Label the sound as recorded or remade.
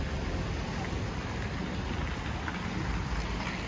recorded